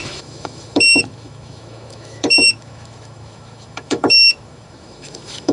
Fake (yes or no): yes